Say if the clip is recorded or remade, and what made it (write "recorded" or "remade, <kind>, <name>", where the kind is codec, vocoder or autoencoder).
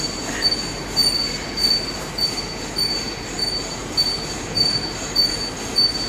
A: recorded